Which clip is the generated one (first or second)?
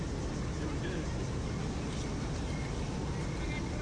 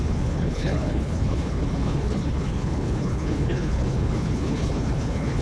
second